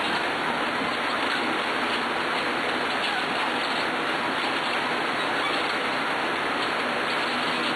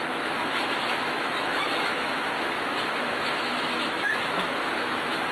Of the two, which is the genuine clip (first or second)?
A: first